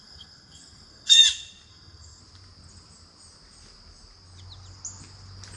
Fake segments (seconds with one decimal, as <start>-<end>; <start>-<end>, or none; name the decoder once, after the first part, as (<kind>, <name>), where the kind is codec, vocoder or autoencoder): 0.0-1.2 (codec, SNAC); 1.7-2.2